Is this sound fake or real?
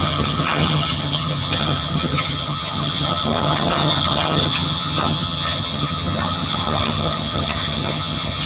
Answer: fake